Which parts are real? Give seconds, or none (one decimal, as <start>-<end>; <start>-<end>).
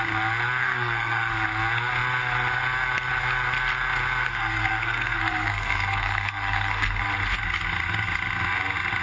0.0-0.6; 1.3-4.2; 7.0-9.0